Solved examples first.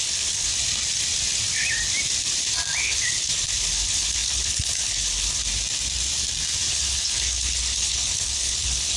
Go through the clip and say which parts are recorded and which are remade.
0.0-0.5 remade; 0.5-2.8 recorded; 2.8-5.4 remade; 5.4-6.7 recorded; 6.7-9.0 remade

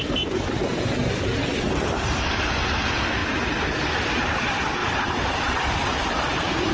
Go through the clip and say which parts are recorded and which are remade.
0.0-4.8 recorded; 4.8-6.7 remade

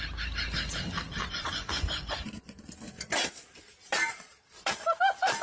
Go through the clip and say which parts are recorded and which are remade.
0.0-1.2 recorded; 1.2-2.7 remade; 2.7-5.4 recorded

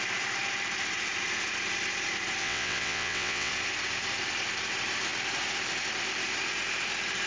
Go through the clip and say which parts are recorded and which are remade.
0.0-2.4 recorded; 2.4-3.5 remade; 3.5-7.3 recorded

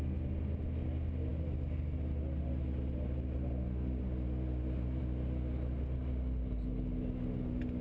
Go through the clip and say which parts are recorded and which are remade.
0.0-7.8 recorded

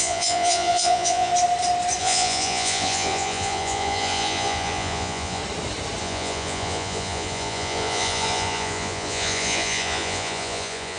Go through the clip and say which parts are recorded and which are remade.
0.0-1.3 remade; 1.3-2.0 recorded; 2.0-5.4 remade; 5.4-6.0 recorded; 6.0-11.0 remade